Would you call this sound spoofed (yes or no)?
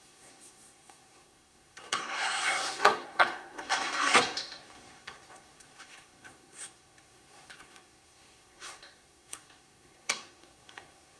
yes